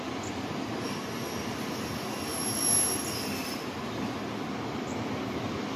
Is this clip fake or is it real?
real